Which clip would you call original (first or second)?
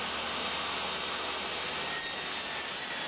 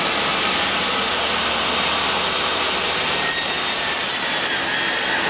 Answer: first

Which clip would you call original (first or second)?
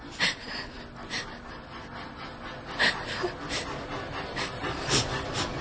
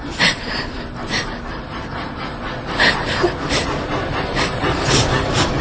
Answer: first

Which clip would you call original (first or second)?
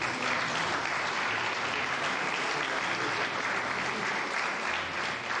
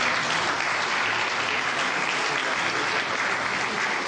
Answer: second